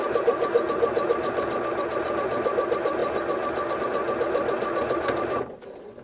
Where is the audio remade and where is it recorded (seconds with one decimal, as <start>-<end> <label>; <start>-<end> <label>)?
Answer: 0.0-6.0 recorded